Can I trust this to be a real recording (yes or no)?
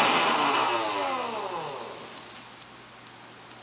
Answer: yes